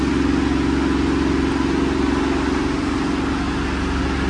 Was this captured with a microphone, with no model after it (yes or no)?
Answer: yes